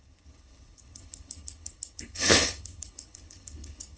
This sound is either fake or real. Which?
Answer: fake